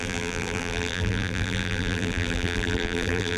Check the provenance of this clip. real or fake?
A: fake